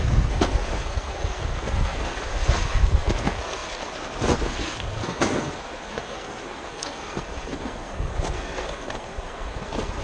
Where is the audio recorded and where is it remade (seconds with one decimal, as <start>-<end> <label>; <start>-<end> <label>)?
0.0-10.0 remade